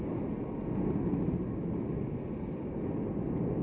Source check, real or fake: real